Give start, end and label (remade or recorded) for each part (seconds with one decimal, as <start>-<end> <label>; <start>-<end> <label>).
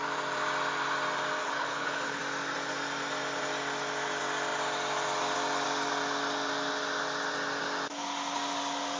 0.0-1.4 recorded; 1.4-2.2 remade; 2.2-9.0 recorded